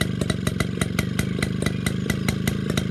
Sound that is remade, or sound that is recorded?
recorded